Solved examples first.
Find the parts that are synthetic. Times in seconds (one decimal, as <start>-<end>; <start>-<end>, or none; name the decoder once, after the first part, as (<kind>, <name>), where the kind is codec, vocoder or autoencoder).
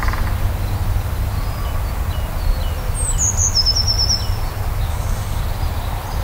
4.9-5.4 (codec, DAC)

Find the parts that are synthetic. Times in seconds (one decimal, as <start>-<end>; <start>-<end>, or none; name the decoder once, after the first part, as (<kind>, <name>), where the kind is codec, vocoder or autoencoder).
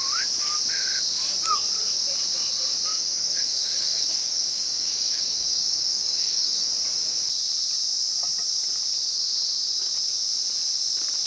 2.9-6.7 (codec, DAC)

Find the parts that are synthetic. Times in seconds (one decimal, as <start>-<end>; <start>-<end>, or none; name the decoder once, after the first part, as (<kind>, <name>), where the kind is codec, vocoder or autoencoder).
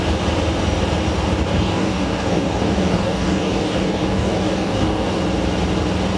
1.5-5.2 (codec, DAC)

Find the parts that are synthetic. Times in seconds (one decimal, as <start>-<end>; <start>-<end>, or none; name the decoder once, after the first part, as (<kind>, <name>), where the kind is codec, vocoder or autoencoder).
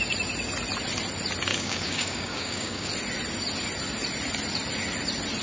1.5-2.9 (codec, DAC)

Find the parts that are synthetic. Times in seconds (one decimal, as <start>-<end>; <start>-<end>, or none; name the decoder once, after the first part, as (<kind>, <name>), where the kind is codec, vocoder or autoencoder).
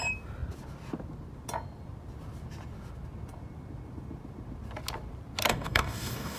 5.5-6.4 (codec, DAC)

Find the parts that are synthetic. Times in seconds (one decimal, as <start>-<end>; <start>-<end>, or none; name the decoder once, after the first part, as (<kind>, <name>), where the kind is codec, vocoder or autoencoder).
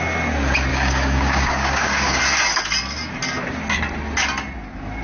0.7-2.2 (codec, DAC)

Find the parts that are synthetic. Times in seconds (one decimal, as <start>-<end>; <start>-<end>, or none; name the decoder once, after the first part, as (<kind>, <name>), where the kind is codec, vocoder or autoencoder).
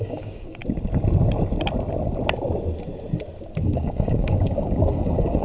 0.0-0.6 (codec, DAC); 3.6-5.4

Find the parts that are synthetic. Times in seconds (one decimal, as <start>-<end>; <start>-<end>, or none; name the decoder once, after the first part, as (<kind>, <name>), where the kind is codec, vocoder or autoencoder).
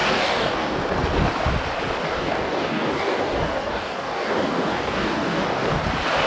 0.0-0.8 (codec, DAC); 2.0-5.8